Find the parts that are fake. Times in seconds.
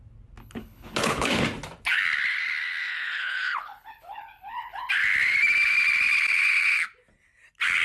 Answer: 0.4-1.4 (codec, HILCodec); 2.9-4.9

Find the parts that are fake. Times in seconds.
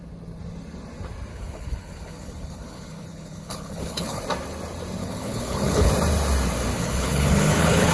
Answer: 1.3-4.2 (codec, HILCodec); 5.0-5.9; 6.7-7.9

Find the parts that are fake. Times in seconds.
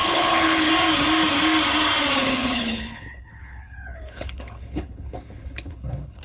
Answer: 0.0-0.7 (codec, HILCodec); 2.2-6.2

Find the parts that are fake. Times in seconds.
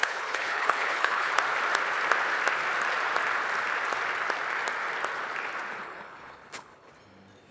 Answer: 0.0-1.3 (codec, HILCodec); 5.8-6.9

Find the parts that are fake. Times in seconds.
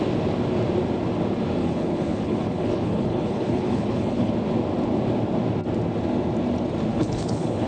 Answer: 1.6-4.3 (codec, HILCodec); 6.9-7.7